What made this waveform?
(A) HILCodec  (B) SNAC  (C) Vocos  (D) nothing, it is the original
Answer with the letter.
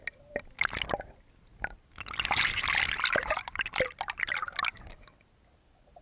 D